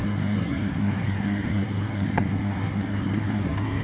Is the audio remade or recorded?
remade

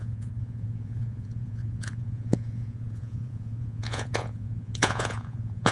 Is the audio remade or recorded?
remade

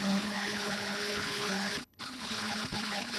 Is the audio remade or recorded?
remade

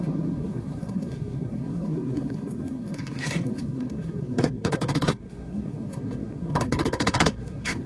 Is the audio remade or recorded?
remade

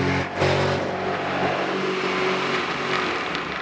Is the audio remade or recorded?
recorded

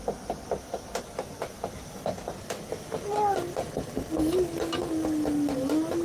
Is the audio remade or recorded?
recorded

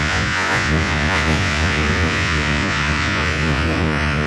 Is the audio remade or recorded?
remade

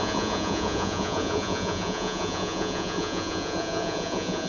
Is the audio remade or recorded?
remade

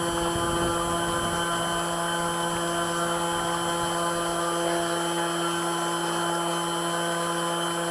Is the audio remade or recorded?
recorded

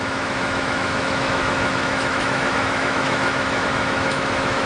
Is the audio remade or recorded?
remade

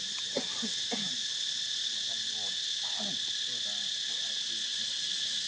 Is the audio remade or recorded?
recorded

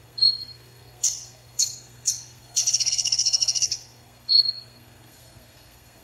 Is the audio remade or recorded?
remade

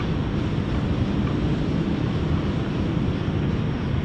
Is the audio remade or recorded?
recorded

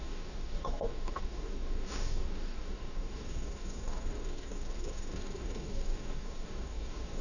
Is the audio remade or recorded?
remade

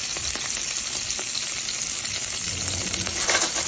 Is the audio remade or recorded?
recorded